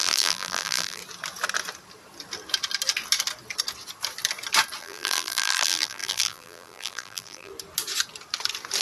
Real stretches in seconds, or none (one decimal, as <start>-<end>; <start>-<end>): 1.0-4.8; 7.5-8.8